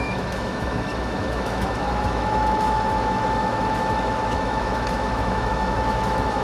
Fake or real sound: fake